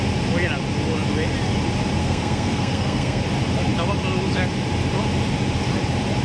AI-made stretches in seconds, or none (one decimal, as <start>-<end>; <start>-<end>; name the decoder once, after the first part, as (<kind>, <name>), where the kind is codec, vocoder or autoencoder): 2.0-3.2 (codec, SNAC)